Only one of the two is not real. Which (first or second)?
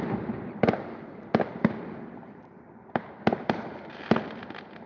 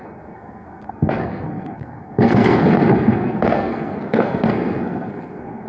second